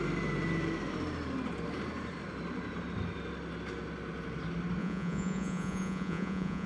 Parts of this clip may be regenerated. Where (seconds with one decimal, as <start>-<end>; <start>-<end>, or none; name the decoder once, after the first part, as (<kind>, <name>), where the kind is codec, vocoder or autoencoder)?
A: 4.8-6.7 (vocoder, Vocos)

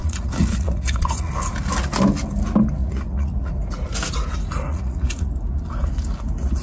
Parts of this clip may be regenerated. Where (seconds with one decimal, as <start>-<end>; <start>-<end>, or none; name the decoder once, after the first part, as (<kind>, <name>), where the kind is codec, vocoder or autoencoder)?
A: 0.0-1.3 (vocoder, Vocos); 2.8-3.5; 4.7-5.3